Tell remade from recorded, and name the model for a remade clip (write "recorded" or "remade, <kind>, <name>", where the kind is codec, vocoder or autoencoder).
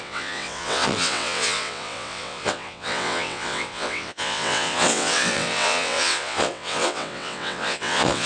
remade, vocoder, WaveNeXt